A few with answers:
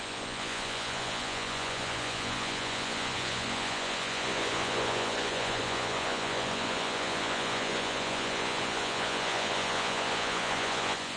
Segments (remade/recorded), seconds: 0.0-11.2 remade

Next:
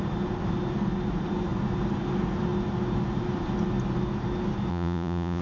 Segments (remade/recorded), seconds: 0.0-4.7 recorded; 4.7-5.4 remade

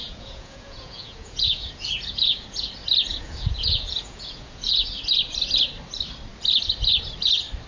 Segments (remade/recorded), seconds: 0.0-2.7 remade; 2.7-3.1 recorded; 3.1-4.9 remade; 4.9-7.7 recorded

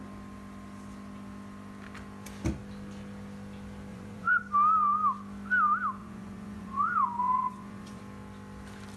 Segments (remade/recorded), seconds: 0.0-3.9 recorded; 3.9-4.4 remade; 4.4-6.0 recorded; 6.0-8.0 remade; 8.0-9.0 recorded

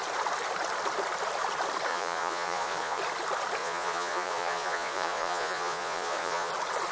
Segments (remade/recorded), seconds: 0.0-1.9 recorded; 1.9-3.0 remade; 3.0-3.6 recorded; 3.6-6.5 remade; 6.5-6.9 recorded

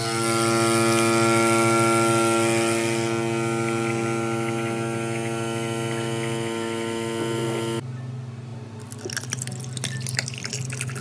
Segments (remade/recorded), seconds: 0.0-11.0 recorded

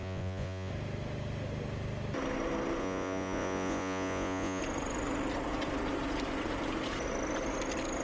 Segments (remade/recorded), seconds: 0.0-0.7 remade; 0.7-2.8 recorded; 2.8-4.6 remade; 4.6-8.0 recorded

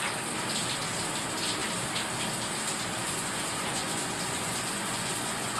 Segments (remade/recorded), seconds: 0.0-3.0 recorded; 3.0-5.6 remade